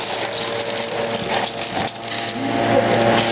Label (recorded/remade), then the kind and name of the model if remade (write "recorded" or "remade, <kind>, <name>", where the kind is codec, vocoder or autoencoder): recorded